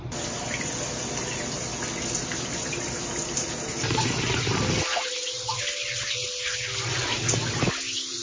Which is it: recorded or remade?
recorded